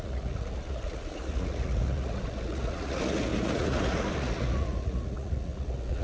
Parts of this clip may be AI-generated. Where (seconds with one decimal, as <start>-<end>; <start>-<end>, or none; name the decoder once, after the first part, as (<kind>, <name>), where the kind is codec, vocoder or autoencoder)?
0.0-6.0 (vocoder, Vocos)